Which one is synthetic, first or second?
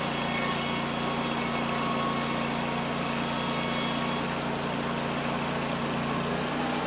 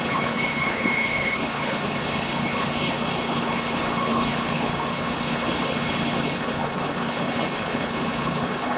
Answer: second